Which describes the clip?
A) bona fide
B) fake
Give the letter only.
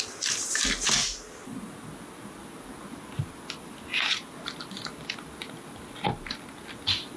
A